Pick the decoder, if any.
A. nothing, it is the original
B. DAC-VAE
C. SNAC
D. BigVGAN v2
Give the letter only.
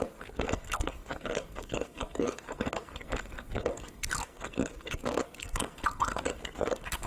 C